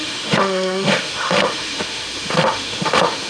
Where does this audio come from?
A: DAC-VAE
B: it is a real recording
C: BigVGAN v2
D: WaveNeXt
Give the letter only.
A